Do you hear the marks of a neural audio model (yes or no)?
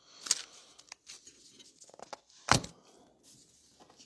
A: no